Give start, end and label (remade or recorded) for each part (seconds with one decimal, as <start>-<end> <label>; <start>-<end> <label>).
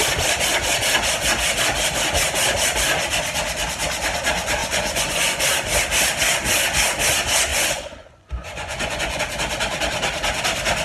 0.0-4.6 recorded; 4.6-5.4 remade; 5.4-7.5 recorded; 7.5-9.2 remade; 9.2-10.8 recorded